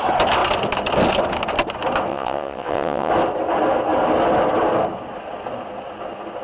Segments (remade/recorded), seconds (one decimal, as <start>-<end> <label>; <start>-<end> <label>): 0.0-2.1 recorded; 2.1-3.1 remade; 3.1-6.4 recorded